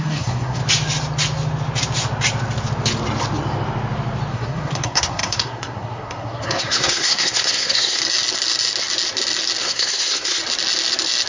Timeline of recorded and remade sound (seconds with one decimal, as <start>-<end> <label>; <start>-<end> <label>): 0.0-0.6 remade; 0.6-4.3 recorded; 4.3-8.0 remade; 8.0-9.6 recorded; 9.6-10.4 remade; 10.4-11.3 recorded